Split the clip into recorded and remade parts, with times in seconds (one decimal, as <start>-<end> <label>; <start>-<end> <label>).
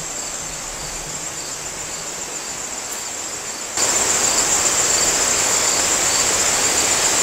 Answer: 0.0-5.3 recorded; 5.3-5.8 remade; 5.8-7.2 recorded